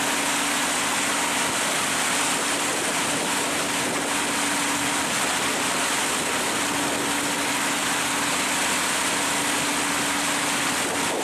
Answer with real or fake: real